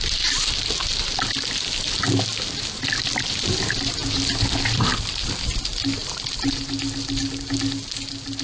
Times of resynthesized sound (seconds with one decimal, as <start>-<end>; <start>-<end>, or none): none